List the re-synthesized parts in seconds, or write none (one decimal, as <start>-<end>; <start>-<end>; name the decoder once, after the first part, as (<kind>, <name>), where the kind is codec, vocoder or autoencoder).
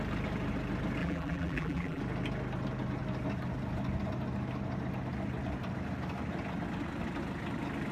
1.0-2.0 (vocoder, BigVGAN v2)